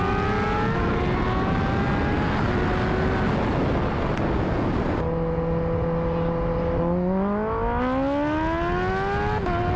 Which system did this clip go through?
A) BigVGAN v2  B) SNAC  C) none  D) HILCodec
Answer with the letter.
C